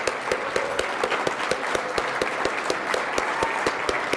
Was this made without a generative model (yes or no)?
yes